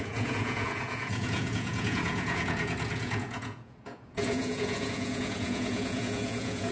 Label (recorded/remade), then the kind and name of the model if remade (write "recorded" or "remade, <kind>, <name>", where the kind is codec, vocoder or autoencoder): remade, vocoder, Vocos